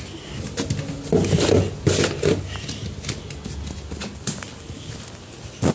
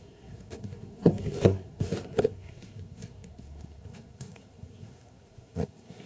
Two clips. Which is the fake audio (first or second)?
second